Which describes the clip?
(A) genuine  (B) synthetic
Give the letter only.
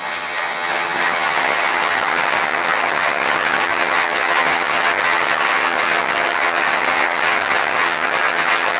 B